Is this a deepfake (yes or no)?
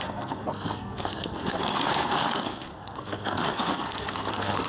yes